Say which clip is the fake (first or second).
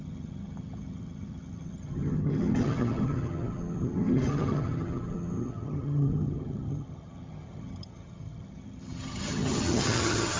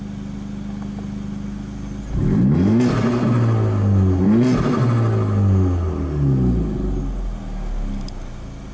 first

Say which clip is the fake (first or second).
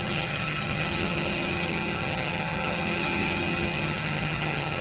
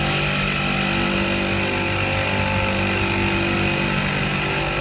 first